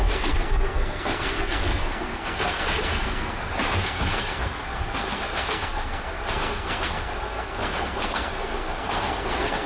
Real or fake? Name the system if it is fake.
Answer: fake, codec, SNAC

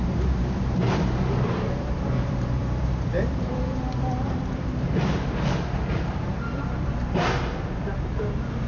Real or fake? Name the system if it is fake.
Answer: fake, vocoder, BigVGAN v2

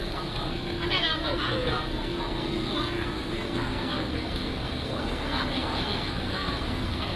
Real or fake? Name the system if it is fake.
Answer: fake, codec, SNAC